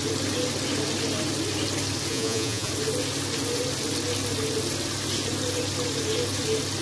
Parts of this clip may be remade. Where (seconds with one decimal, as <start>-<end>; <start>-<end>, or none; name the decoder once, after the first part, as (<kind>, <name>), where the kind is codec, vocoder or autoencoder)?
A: 2.1-2.7 (vocoder, Vocos)